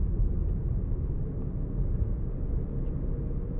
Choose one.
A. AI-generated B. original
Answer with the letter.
B